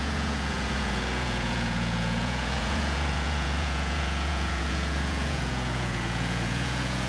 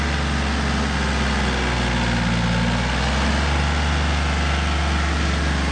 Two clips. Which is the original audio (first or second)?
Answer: second